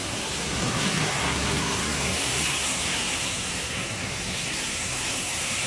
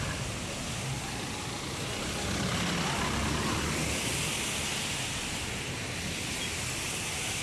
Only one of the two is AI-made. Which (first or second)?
first